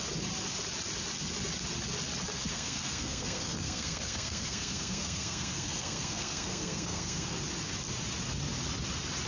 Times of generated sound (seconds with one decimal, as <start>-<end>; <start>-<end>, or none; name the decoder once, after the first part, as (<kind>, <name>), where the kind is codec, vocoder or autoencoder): 2.5-7.3 (codec, SNAC)